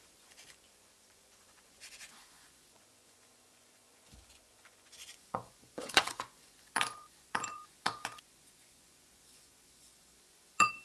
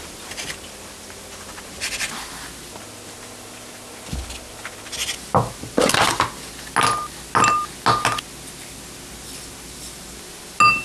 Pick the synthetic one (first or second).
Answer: first